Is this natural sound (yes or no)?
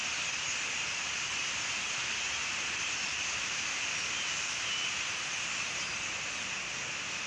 yes